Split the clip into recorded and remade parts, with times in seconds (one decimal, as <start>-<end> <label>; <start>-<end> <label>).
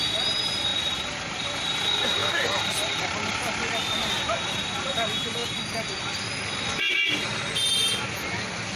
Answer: 0.0-8.8 recorded